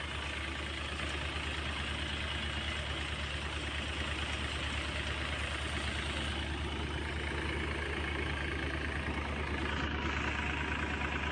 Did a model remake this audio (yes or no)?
no